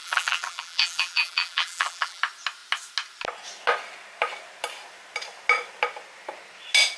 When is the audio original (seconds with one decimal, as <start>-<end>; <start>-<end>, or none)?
2.2-7.0

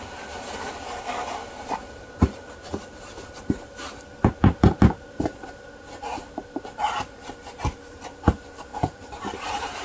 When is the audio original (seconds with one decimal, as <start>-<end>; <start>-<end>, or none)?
none

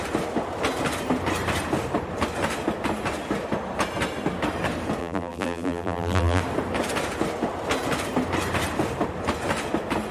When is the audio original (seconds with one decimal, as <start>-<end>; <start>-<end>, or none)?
0.0-5.0; 6.4-10.1

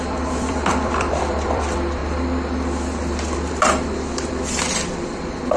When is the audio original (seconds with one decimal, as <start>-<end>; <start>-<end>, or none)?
2.0-3.5

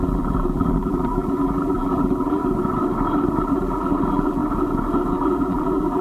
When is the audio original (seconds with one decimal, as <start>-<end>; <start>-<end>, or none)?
2.4-3.4; 4.4-5.1

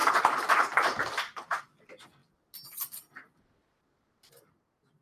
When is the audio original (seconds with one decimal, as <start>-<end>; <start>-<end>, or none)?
1.6-5.0